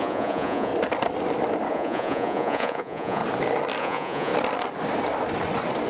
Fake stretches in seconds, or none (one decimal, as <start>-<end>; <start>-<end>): 0.0-0.7; 1.7-3.2; 3.8-4.3

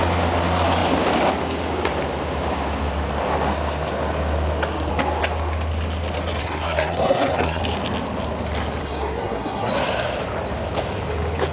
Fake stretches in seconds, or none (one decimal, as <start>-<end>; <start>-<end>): 6.4-7.6; 8.8-9.7

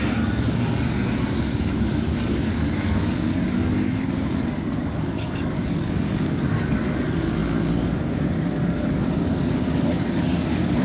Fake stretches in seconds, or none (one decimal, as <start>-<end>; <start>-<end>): 0.0-10.8